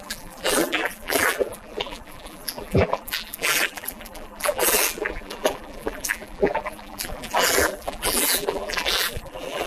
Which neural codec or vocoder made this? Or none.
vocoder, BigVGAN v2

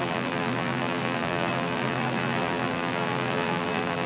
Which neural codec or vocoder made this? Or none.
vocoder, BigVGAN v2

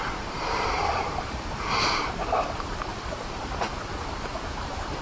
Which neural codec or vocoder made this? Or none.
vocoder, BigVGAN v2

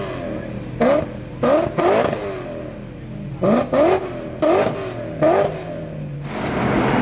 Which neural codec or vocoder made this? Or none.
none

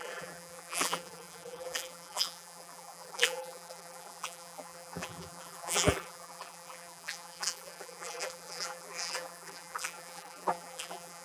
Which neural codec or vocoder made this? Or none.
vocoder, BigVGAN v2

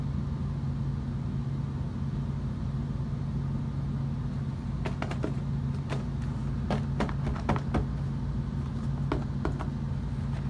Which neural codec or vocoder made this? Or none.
none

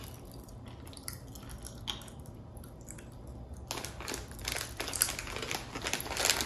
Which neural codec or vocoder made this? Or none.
none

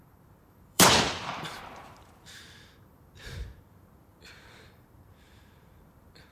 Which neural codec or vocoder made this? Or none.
vocoder, BigVGAN v2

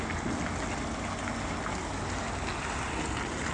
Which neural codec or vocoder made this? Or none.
none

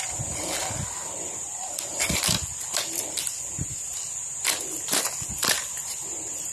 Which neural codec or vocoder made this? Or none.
none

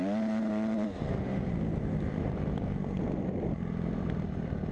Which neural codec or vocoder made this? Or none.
vocoder, BigVGAN v2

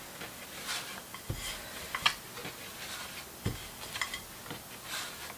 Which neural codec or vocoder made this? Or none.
none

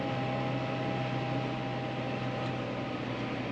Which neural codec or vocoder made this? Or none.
none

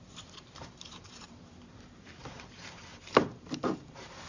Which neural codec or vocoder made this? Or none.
vocoder, BigVGAN v2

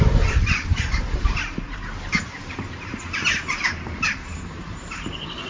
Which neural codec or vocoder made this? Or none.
vocoder, BigVGAN v2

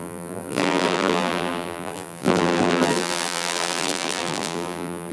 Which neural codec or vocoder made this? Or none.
vocoder, BigVGAN v2